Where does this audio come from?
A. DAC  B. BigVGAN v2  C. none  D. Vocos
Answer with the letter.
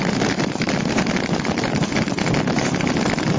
C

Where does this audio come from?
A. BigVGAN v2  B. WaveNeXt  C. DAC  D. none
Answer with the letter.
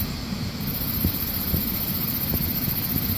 D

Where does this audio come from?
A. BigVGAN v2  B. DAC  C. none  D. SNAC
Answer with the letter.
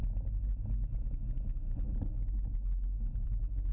C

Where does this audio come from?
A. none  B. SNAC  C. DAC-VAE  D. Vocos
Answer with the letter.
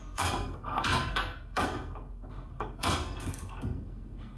B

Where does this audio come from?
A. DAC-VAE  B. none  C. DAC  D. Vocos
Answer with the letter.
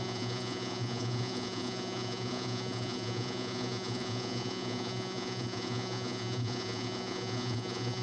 D